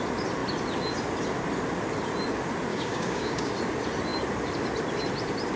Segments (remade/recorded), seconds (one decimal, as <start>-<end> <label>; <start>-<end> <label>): 0.0-2.7 recorded; 2.7-3.5 remade; 3.5-5.6 recorded